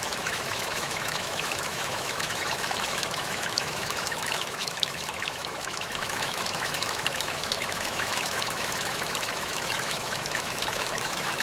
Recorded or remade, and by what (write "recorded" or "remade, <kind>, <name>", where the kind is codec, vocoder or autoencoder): remade, autoencoder, DAC-VAE